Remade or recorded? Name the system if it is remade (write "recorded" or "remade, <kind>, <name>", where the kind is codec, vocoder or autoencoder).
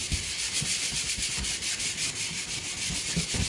recorded